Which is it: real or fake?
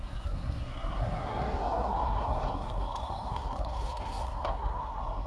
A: fake